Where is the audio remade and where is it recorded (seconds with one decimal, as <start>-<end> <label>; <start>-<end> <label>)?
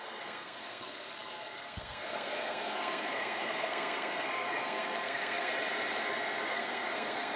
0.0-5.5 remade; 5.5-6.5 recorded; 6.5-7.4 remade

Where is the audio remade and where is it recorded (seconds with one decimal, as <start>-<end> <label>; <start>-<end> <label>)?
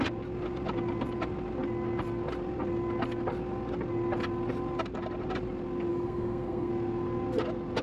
0.0-5.9 recorded; 5.9-6.7 remade; 6.7-7.8 recorded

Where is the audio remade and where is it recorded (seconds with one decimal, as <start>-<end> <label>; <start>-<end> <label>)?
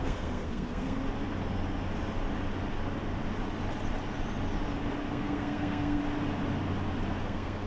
0.0-1.0 remade; 1.0-5.1 recorded; 5.1-6.0 remade; 6.0-7.2 recorded; 7.2-7.7 remade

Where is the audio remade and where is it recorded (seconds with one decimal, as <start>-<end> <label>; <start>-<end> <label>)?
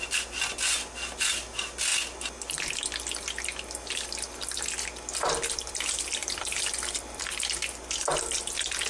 0.0-6.2 recorded; 6.2-7.2 remade; 7.2-8.9 recorded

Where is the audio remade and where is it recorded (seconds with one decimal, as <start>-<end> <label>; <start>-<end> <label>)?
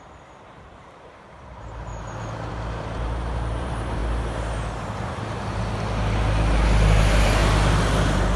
0.0-1.9 remade; 1.9-2.5 recorded; 2.5-4.0 remade; 4.0-7.0 recorded; 7.0-7.4 remade; 7.4-8.4 recorded